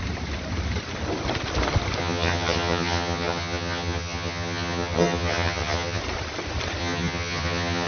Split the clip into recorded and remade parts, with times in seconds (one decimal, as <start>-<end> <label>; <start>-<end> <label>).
0.0-2.0 recorded; 2.0-6.0 remade; 6.0-6.8 recorded; 6.8-7.9 remade